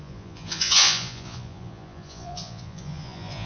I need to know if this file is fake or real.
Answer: fake